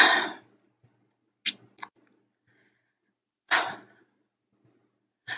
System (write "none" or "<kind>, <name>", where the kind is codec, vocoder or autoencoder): none